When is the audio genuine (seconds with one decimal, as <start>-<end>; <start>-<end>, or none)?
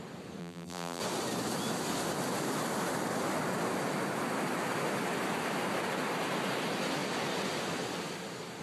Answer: 0.0-0.4; 1.0-8.6